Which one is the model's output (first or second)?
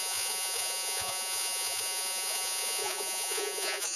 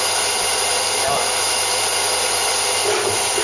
first